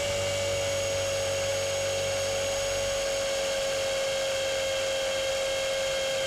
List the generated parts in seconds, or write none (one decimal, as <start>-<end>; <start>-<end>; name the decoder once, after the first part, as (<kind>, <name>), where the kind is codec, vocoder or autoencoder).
none